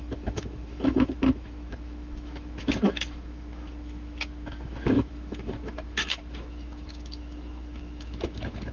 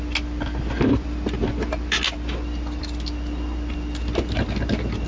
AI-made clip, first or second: first